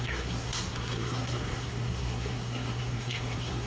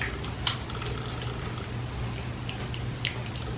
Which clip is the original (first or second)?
second